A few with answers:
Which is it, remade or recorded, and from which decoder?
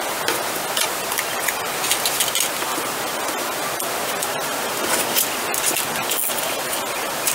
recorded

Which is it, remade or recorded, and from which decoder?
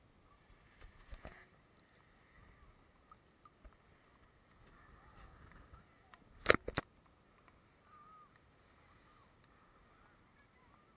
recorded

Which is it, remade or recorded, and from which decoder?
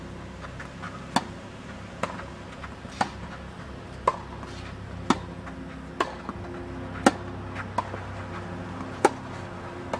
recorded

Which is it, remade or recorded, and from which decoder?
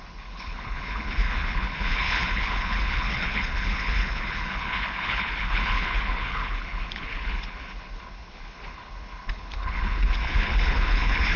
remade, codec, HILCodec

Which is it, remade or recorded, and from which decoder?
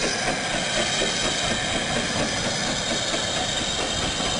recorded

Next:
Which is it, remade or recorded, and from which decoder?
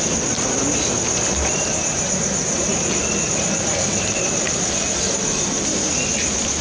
recorded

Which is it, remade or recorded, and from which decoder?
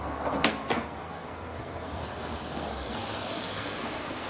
remade, codec, SNAC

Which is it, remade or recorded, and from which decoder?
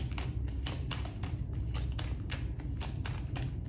recorded